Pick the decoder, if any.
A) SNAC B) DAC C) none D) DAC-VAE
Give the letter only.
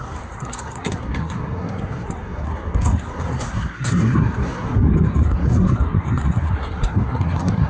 A